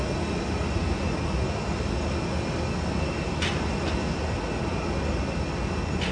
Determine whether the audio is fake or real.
real